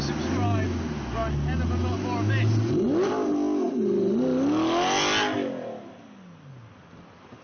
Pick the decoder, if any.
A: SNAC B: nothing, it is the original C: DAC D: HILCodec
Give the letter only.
B